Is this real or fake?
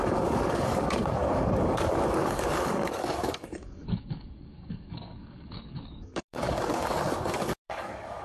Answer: fake